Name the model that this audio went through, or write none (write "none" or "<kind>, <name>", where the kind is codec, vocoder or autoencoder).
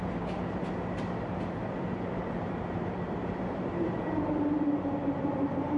vocoder, BigVGAN v2